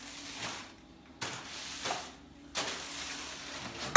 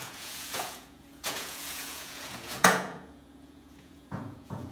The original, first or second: first